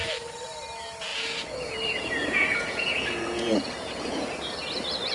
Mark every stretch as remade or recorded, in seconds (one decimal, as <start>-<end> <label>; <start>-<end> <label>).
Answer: 0.0-1.1 recorded; 1.1-4.2 remade; 4.2-5.1 recorded